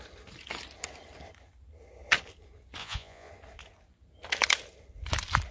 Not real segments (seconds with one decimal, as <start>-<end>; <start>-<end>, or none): 2.8-3.3